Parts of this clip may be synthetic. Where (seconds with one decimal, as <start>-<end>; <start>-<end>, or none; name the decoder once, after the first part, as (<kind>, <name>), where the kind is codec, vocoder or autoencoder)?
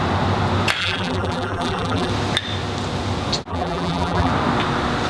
0.8-2.1 (vocoder, BigVGAN v2); 3.5-4.3